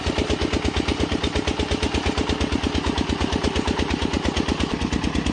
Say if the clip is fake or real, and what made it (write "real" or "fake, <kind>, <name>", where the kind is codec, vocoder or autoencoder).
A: real